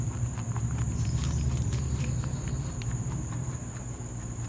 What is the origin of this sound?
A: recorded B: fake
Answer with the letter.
B